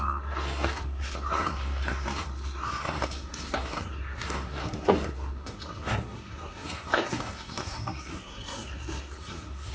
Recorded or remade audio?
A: remade